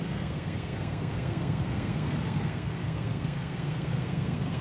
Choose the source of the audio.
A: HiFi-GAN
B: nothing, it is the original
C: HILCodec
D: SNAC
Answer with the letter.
D